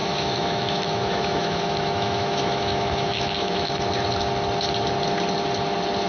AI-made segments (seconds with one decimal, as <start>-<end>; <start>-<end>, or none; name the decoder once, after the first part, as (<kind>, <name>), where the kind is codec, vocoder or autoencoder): 0.0-3.7 (autoencoder, DAC-VAE)